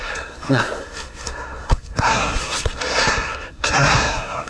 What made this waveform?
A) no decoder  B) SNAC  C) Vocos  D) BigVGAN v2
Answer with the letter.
B